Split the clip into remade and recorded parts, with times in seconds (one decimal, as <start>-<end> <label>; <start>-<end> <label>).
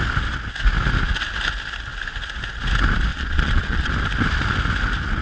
0.0-3.1 recorded; 3.1-3.9 remade; 3.9-5.2 recorded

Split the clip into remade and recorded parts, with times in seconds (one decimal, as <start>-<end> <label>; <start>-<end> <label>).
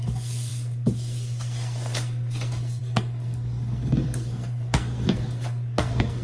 0.0-6.2 remade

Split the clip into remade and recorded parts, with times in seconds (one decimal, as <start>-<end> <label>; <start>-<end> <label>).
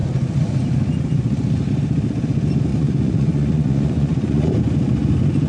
0.0-2.7 recorded; 2.7-4.6 remade; 4.6-5.5 recorded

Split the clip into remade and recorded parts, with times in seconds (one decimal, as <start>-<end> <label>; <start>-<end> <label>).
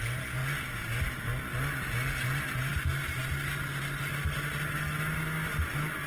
0.0-6.1 recorded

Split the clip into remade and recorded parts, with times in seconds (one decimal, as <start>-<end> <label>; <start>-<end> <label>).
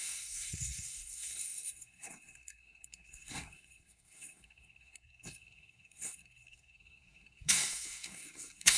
0.0-8.8 remade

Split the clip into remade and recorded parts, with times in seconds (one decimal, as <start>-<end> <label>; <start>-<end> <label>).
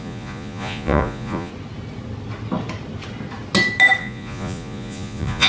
0.0-1.5 remade; 1.5-4.0 recorded; 4.0-5.5 remade